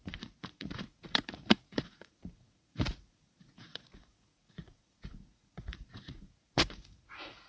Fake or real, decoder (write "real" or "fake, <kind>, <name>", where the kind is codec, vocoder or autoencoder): fake, vocoder, Vocos